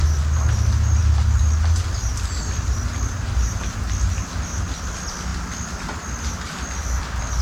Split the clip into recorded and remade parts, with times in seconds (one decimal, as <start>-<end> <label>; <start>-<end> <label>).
0.0-7.4 recorded